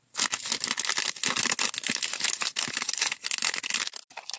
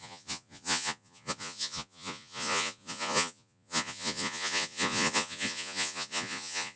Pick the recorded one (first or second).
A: first